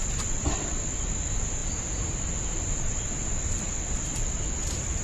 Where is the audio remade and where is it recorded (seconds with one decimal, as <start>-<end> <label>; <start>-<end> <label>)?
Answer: 0.0-5.0 recorded